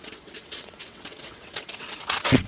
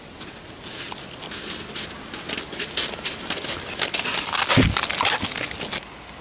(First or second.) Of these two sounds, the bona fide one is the second